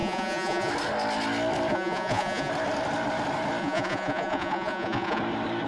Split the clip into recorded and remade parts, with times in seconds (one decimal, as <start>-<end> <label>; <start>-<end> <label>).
0.0-0.7 remade; 0.7-1.7 recorded; 1.7-2.5 remade; 2.5-3.6 recorded; 3.6-5.2 remade; 5.2-5.7 recorded